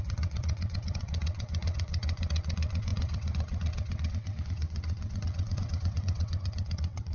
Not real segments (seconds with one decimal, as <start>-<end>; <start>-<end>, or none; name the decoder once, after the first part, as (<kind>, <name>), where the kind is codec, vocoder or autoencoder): 0.0-7.1 (vocoder, WaveNeXt)